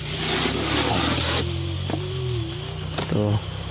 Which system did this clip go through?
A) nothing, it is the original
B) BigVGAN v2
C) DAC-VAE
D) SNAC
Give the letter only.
A